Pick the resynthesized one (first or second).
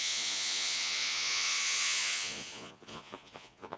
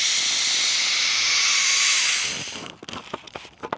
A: first